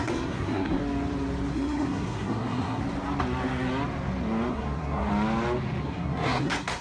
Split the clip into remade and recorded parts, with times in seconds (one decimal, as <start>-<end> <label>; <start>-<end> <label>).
0.0-0.8 remade; 0.8-1.5 recorded; 1.5-2.8 remade; 2.8-4.5 recorded; 4.5-5.1 remade; 5.1-5.8 recorded; 5.8-6.8 remade